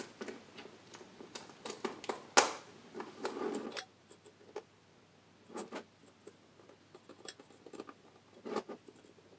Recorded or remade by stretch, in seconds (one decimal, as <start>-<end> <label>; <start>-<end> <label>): 0.0-9.4 recorded